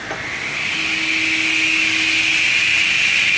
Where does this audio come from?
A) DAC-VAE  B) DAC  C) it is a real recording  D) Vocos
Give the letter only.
C